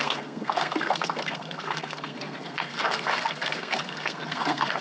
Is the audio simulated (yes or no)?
yes